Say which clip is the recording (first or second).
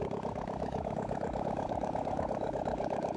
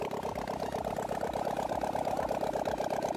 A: second